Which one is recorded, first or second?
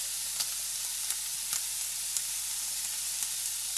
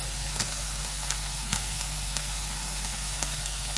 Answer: first